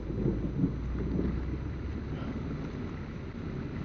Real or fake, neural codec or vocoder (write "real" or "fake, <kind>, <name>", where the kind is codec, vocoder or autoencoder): real